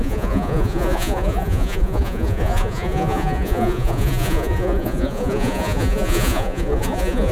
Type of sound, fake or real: fake